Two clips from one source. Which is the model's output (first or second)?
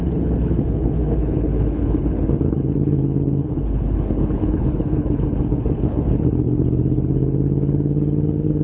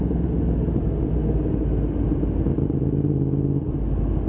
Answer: first